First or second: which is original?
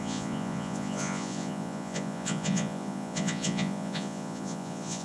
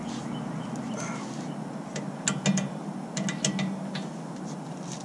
second